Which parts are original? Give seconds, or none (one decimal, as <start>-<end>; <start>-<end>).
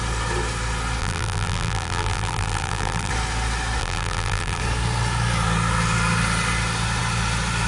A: 0.0-1.0; 3.1-3.8; 4.6-7.7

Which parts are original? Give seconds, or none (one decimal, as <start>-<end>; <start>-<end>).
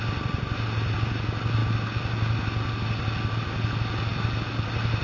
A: 0.0-5.0